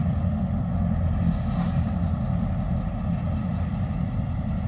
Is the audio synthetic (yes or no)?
no